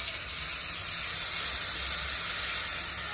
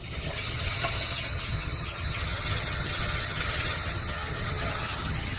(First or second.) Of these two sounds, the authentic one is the first